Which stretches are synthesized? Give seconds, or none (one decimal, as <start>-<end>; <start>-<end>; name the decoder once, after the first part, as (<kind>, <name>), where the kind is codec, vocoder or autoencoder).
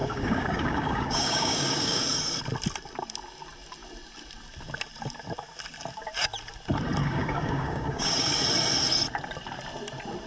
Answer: 0.0-2.0 (codec, DAC); 7.0-8.3